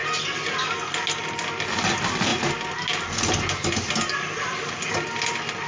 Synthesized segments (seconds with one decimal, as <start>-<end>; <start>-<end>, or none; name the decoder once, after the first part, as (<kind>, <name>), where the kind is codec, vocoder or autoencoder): none